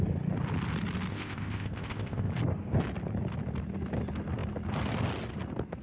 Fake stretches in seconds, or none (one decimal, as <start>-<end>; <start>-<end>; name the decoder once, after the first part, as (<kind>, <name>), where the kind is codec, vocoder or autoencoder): 1.1-2.3 (codec, ZipCodec)